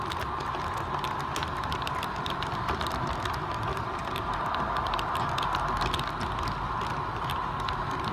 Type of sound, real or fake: real